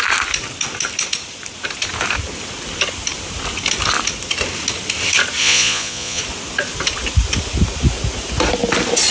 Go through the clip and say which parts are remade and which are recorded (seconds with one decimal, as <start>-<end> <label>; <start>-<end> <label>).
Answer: 0.0-5.4 recorded; 5.4-6.2 remade; 6.2-9.1 recorded